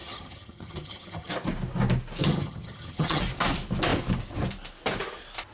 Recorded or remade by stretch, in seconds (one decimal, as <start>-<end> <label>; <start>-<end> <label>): 0.0-1.3 remade; 1.3-2.2 recorded; 2.2-3.2 remade; 3.2-5.5 recorded

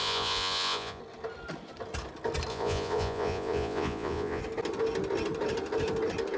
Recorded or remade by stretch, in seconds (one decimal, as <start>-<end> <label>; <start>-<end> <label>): 0.0-1.0 remade; 1.0-2.5 recorded; 2.5-4.4 remade; 4.4-6.4 recorded